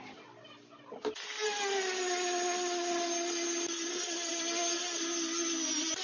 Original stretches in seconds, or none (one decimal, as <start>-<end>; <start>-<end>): 0.0-6.0